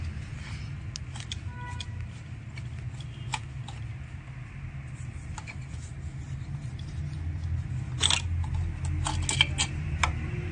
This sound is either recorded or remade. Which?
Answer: recorded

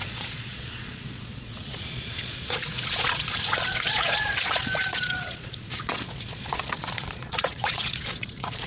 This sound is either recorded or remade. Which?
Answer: remade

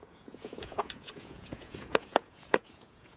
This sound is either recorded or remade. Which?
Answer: remade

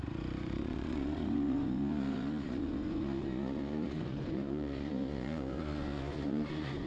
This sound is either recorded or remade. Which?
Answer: remade